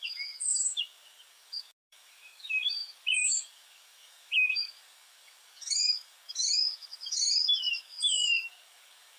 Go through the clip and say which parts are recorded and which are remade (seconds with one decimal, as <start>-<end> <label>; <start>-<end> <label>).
0.0-9.2 remade